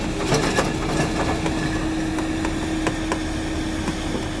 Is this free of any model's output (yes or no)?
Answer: yes